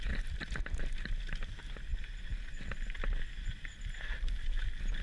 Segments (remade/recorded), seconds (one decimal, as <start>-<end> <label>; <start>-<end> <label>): 0.0-5.0 recorded